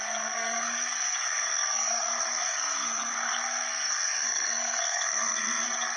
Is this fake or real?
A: fake